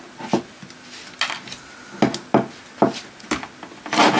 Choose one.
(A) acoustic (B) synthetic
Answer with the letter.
A